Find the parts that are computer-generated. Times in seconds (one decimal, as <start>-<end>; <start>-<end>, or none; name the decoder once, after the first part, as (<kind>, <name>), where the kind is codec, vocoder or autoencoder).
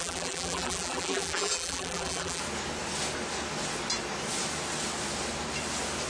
0.0-2.4 (vocoder, BigVGAN v2)